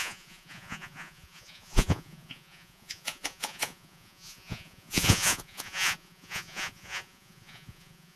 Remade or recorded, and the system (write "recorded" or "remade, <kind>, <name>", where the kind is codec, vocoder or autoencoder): remade, vocoder, Vocos